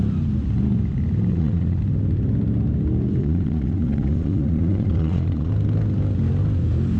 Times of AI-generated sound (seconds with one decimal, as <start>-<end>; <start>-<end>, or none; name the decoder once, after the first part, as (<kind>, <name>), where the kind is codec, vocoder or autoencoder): 1.3-1.8 (vocoder, Vocos); 3.2-5.5